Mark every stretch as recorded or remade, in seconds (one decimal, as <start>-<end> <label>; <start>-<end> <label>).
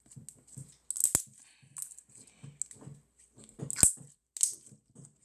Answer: 0.0-5.2 recorded